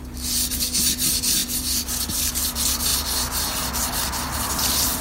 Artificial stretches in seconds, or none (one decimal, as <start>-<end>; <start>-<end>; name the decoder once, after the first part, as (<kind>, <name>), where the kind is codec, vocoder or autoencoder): none

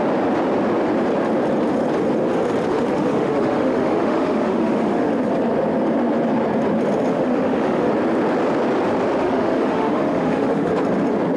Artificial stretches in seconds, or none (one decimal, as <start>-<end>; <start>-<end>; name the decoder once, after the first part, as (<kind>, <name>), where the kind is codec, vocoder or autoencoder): 2.7-5.1 (autoencoder, DAC-VAE); 7.1-7.9; 9.2-10.7

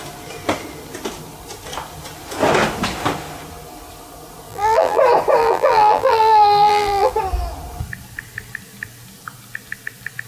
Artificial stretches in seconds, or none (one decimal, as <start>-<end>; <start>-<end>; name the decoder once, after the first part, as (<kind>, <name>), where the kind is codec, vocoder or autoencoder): 4.5-5.0 (vocoder, BigVGAN v2); 5.4-7.1

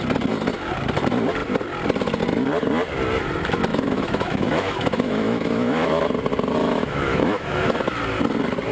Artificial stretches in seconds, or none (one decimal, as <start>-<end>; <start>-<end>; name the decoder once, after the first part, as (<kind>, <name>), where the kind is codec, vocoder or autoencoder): 3.7-6.0 (autoencoder, DAC-VAE); 6.6-7.7

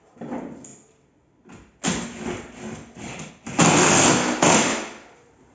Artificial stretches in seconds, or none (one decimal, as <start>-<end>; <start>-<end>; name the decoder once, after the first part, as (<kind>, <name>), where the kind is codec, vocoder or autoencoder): none

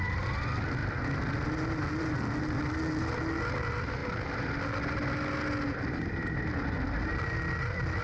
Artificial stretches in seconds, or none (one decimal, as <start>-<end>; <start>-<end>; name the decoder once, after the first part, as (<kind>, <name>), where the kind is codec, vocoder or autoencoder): none